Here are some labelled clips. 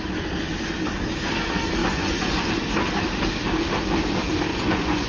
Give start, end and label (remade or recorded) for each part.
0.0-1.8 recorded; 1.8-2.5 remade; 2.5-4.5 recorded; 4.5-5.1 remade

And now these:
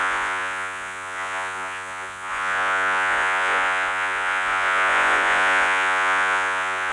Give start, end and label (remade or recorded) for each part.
0.0-6.9 remade

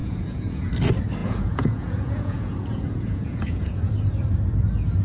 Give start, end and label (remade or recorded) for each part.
0.0-0.7 remade; 0.7-1.2 recorded; 1.2-3.9 remade; 3.9-5.0 recorded

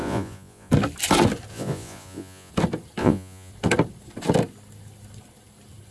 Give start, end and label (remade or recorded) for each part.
0.0-0.7 remade; 0.7-1.5 recorded; 1.5-2.5 remade; 2.5-3.0 recorded; 3.0-3.5 remade; 3.5-5.9 recorded